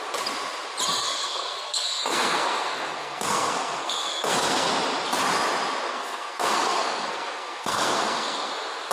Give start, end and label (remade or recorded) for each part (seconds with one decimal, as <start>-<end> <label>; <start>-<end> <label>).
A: 0.0-1.0 recorded; 1.0-4.7 remade; 4.7-5.9 recorded; 5.9-8.5 remade; 8.5-8.9 recorded

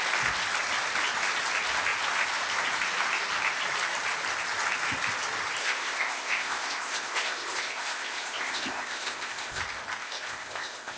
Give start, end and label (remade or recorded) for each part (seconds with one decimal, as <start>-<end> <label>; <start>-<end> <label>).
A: 0.0-5.6 recorded; 5.6-9.6 remade; 9.6-10.0 recorded; 10.0-11.0 remade

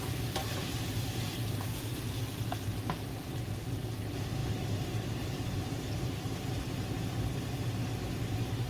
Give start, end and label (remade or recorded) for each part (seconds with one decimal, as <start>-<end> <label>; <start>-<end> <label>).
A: 0.0-0.4 recorded; 0.4-1.5 remade; 1.5-4.4 recorded; 4.4-6.6 remade; 6.6-8.7 recorded

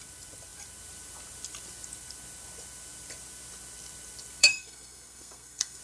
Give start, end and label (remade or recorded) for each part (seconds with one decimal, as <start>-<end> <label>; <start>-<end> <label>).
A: 0.0-4.4 recorded; 4.4-5.8 remade

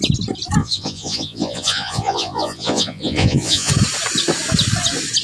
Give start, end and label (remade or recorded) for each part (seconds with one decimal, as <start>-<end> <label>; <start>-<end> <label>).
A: 0.0-0.6 recorded; 0.6-3.7 remade; 3.7-5.2 recorded

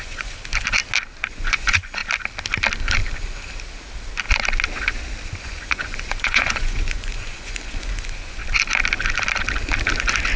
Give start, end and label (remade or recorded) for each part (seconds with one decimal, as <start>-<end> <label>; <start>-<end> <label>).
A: 0.0-0.4 remade; 0.4-1.3 recorded; 1.3-2.0 remade; 2.0-5.4 recorded; 5.4-8.4 remade; 8.4-10.4 recorded